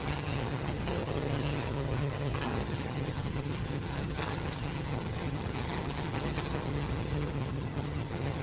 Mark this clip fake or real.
fake